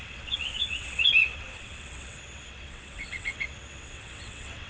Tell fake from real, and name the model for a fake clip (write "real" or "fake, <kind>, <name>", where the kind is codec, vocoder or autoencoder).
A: fake, vocoder, WaveNeXt